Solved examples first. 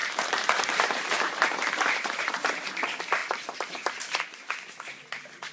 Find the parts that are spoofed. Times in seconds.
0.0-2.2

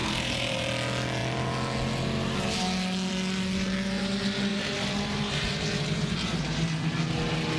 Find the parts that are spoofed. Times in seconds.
0.0-0.7; 4.5-6.6

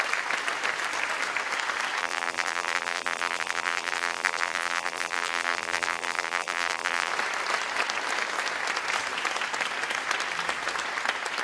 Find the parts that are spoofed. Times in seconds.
2.0-7.1

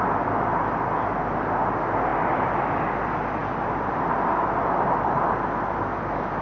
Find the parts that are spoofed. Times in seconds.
none

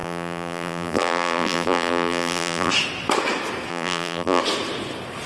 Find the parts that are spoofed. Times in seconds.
0.0-2.7; 3.7-4.4

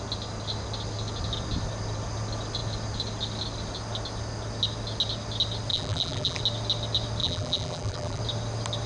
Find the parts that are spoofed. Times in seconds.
5.7-6.4; 7.2-8.2